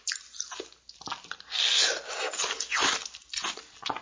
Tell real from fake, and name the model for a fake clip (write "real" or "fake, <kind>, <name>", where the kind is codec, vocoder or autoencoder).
real